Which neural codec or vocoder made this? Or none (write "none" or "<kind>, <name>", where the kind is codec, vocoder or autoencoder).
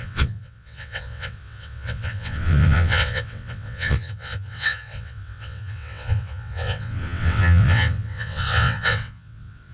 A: vocoder, WaveNeXt